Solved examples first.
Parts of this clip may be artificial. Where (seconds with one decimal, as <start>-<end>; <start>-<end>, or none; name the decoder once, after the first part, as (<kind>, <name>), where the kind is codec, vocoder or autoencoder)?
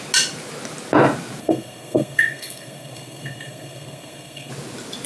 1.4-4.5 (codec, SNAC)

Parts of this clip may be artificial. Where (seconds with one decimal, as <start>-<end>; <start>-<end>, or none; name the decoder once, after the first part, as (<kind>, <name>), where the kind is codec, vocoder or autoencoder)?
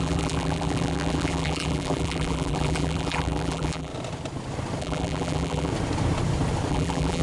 0.0-3.9 (vocoder, BigVGAN v2); 4.8-5.7; 6.7-7.2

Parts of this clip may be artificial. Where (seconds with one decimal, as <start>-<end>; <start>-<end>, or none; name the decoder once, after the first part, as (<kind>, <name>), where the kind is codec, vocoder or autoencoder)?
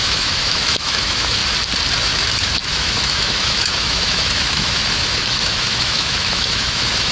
0.0-1.4 (autoencoder, DAC-VAE); 2.0-7.1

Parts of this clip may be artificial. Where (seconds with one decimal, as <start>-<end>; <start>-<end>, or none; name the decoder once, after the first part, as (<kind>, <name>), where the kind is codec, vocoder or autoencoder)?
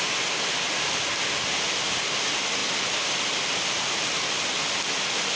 none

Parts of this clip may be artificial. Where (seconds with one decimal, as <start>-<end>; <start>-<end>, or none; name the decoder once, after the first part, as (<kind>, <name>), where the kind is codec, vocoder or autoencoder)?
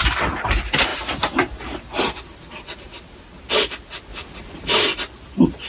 none